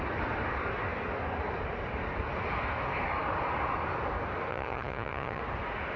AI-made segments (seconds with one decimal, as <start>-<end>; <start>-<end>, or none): 4.5-5.4

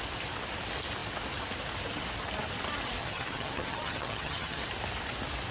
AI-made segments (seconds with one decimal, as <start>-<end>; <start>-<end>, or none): 3.0-4.6

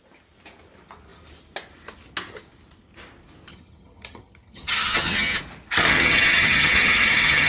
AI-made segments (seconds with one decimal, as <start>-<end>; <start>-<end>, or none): 3.5-5.4; 5.9-7.5

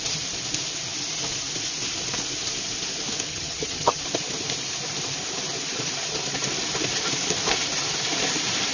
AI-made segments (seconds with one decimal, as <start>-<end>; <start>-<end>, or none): 3.3-4.0

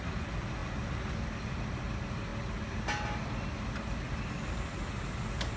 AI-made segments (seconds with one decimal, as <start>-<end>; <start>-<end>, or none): none

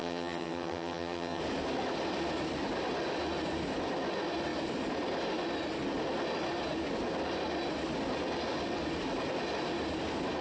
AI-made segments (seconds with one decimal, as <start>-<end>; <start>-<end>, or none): 0.0-1.4